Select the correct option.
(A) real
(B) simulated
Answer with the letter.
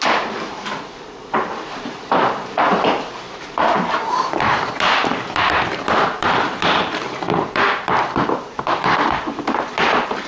B